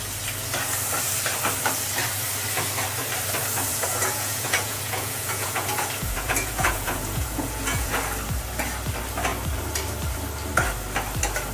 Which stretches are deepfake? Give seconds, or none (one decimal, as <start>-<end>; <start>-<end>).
3.7-7.9